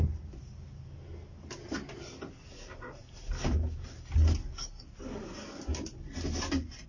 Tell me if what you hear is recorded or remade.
recorded